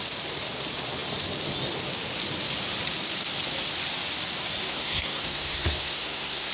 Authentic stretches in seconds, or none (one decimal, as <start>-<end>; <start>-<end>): 0.0-4.7